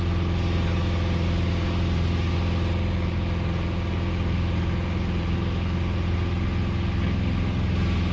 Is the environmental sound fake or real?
real